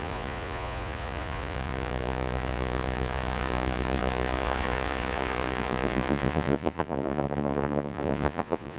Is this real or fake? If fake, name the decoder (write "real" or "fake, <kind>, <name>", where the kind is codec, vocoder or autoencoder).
fake, vocoder, Vocos